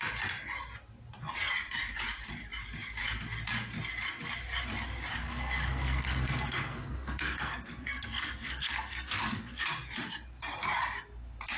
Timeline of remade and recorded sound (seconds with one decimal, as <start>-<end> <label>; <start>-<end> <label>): 0.0-5.2 recorded; 5.2-9.6 remade; 9.6-11.6 recorded